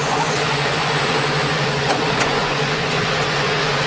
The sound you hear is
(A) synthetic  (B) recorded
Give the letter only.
A